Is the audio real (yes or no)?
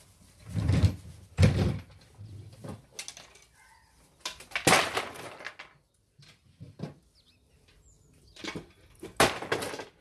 yes